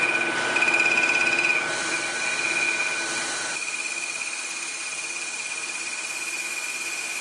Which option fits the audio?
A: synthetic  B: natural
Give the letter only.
B